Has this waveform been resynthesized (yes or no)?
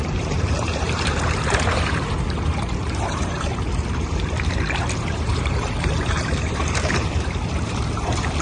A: yes